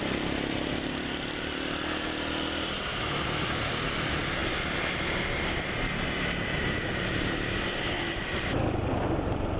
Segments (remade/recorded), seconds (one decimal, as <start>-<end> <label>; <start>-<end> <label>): 0.0-2.9 recorded; 2.9-3.6 remade; 3.6-9.6 recorded